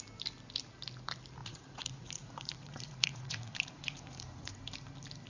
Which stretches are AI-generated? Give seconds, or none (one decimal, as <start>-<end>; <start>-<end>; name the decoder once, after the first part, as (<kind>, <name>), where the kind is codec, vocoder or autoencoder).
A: 1.4-4.5 (vocoder, Vocos)